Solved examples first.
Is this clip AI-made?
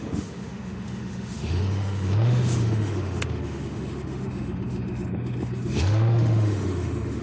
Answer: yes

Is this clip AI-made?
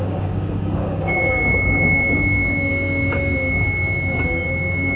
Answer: yes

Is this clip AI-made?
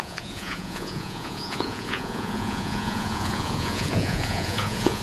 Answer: yes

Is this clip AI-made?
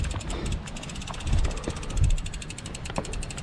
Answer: yes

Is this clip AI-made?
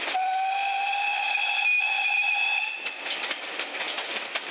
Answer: no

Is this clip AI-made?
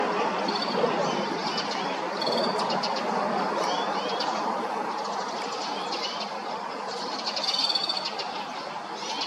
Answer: yes